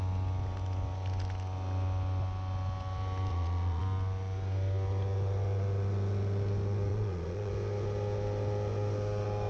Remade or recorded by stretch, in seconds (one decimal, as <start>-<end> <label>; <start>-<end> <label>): 0.0-3.3 recorded; 3.3-3.8 remade; 3.8-6.9 recorded; 6.9-7.5 remade; 7.5-9.5 recorded